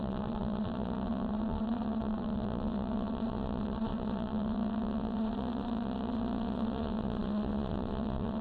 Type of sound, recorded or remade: remade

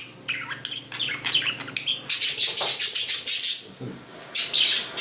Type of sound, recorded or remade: recorded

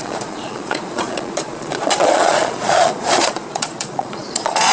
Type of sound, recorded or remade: remade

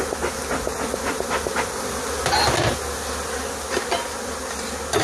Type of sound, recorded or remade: recorded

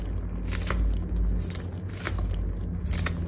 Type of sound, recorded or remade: recorded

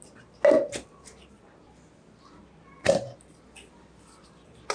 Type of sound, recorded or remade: recorded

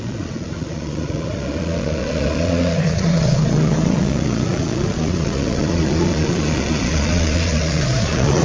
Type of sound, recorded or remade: remade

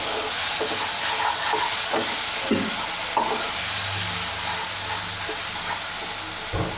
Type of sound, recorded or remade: recorded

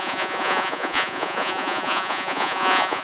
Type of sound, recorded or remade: remade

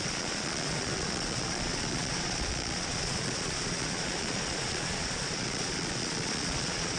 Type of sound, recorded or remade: remade